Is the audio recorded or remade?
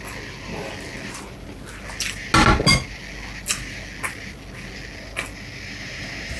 recorded